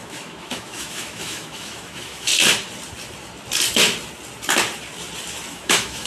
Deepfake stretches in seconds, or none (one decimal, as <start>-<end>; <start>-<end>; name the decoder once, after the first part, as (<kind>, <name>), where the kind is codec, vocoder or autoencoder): 0.0-2.3 (autoencoder, DAC-VAE); 5.5-6.1

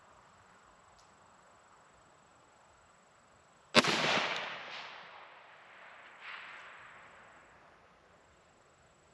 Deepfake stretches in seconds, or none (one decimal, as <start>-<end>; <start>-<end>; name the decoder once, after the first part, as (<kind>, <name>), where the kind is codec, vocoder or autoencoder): none

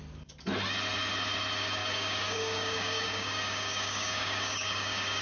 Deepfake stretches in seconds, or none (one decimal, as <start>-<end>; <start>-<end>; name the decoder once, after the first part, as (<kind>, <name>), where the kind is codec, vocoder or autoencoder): 1.8-5.2 (codec, DAC)

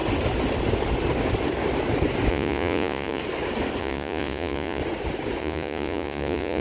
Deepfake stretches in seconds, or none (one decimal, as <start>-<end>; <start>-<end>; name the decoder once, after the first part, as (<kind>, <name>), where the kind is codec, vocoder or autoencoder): 2.3-3.2 (vocoder, Vocos); 3.8-4.8; 5.4-6.6